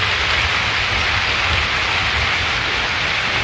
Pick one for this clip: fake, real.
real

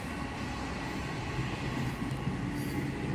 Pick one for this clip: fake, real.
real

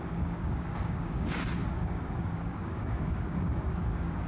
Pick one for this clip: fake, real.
fake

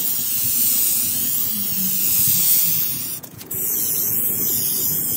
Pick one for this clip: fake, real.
fake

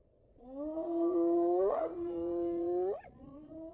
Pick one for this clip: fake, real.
fake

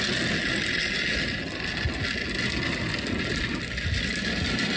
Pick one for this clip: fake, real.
real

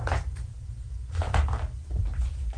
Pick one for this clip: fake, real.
fake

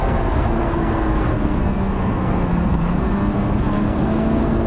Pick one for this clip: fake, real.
fake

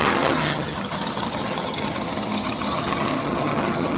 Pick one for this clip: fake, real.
fake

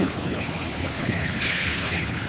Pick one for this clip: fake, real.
fake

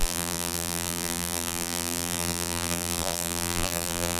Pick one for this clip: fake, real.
fake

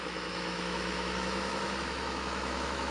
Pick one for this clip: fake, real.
fake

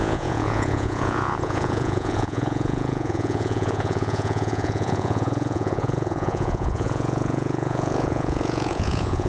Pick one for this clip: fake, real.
fake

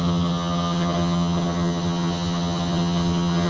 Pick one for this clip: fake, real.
fake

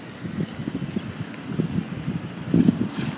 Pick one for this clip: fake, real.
real